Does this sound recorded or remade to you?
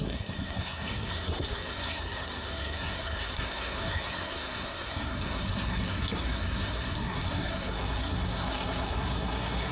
remade